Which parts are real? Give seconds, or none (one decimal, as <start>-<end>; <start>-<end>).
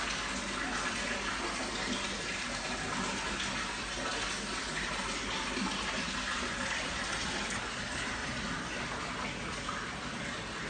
0.0-10.7